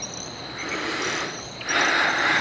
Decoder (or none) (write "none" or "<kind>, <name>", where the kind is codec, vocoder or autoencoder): none